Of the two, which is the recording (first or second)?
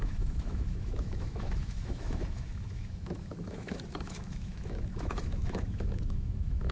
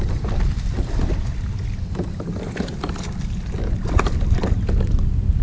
second